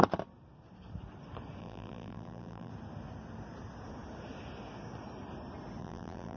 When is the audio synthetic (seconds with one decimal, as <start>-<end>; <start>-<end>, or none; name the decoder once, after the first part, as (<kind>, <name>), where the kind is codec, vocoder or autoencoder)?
1.6-2.7 (vocoder, BigVGAN v2); 5.8-6.4